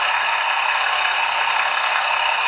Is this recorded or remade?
remade